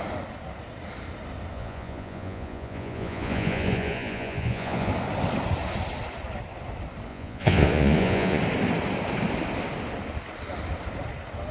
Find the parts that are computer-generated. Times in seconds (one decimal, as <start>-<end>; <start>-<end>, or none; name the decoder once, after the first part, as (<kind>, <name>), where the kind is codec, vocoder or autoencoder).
1.5-4.9 (vocoder, Vocos); 7.1-8.4